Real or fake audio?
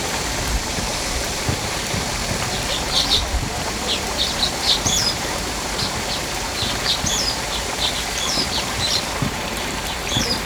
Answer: fake